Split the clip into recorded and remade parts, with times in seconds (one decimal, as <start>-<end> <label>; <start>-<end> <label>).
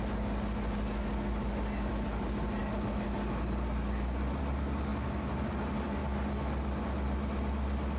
0.0-8.0 recorded